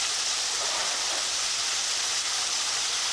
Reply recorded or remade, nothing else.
recorded